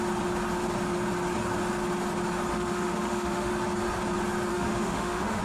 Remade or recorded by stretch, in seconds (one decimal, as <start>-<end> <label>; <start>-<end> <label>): 0.0-2.5 recorded; 2.5-3.5 remade; 3.5-4.5 recorded; 4.5-5.4 remade